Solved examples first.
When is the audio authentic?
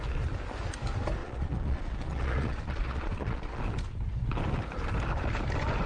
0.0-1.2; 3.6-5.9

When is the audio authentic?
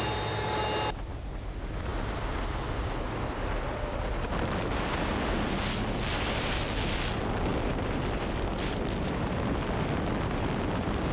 0.0-11.1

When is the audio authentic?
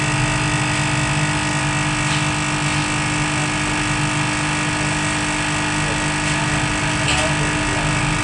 0.0-8.2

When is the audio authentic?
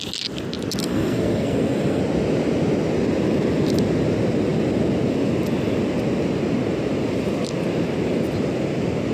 0.0-0.8; 2.0-9.1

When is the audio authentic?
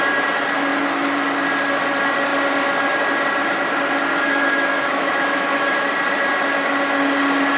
0.0-4.1; 5.9-7.6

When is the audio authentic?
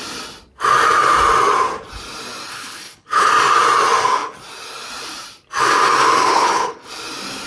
0.0-2.5; 3.3-6.3; 6.9-7.5